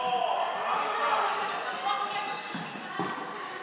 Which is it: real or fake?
real